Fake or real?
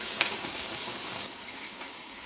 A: fake